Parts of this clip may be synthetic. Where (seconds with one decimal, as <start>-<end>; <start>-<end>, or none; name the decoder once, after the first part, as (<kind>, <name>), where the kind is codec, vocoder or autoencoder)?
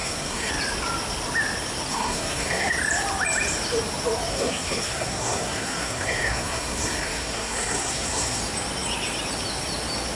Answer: 0.0-0.5 (codec, SNAC); 1.9-2.7; 4.3-8.4